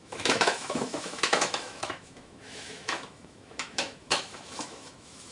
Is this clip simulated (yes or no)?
yes